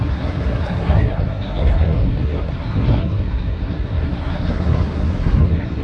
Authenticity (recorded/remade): remade